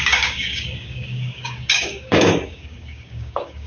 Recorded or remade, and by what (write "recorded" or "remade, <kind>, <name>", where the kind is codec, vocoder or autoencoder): remade, codec, DAC